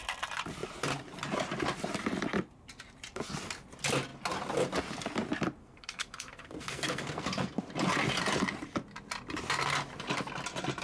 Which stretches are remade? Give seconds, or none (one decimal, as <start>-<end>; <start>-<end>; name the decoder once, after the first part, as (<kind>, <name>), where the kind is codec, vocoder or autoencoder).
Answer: 5.6-7.6 (codec, SNAC)